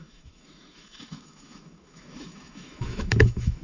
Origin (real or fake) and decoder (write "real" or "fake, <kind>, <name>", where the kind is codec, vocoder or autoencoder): fake, autoencoder, DAC-VAE